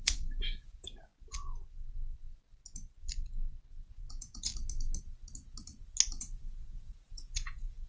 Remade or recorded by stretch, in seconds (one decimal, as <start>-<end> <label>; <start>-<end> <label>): 0.0-1.1 remade; 1.1-3.9 recorded; 3.9-4.5 remade; 4.5-6.2 recorded; 6.2-7.9 remade